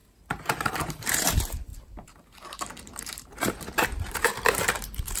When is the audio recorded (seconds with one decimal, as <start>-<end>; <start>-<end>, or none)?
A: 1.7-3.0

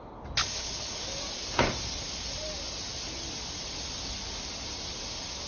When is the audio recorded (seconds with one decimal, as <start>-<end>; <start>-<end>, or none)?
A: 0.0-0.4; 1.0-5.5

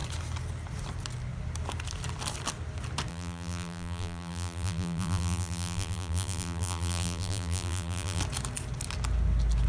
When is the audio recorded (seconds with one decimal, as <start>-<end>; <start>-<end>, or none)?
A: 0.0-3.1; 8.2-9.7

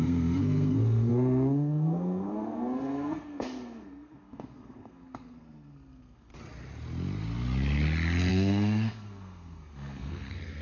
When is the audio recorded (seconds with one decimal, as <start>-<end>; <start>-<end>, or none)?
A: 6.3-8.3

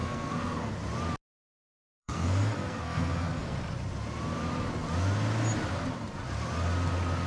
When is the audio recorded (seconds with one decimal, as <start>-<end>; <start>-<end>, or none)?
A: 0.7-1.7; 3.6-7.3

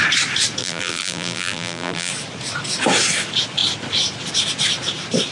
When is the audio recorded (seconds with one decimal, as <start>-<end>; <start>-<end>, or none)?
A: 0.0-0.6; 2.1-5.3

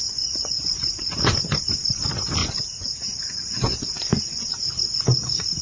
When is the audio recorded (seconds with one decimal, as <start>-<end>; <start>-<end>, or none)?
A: 0.7-2.4; 4.5-5.6